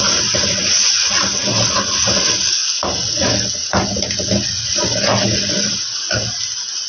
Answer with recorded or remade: recorded